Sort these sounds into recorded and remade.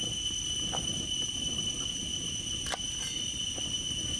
recorded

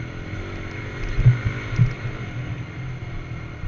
recorded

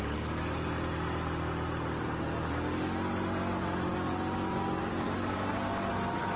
recorded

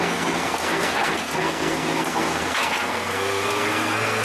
remade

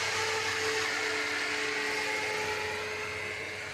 recorded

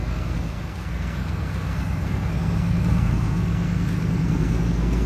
remade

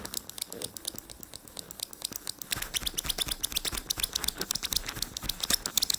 recorded